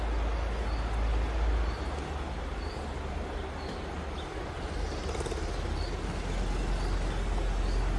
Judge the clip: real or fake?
real